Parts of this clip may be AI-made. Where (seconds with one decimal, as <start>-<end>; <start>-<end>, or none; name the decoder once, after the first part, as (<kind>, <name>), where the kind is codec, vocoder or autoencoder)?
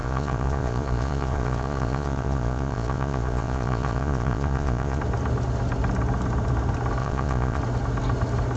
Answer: 0.0-5.0 (vocoder, Vocos); 7.0-7.6